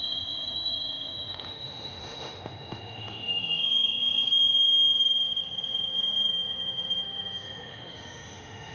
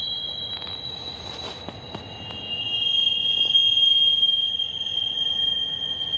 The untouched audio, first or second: second